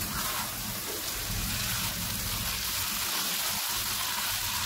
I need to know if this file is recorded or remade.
recorded